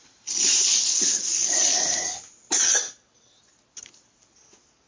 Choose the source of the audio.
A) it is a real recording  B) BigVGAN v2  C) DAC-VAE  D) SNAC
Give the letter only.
A